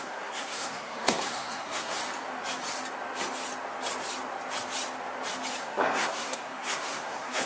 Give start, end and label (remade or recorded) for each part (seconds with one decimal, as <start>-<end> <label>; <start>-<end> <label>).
0.0-2.0 remade; 2.0-5.6 recorded; 5.6-7.5 remade